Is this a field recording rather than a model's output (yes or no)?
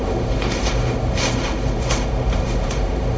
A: no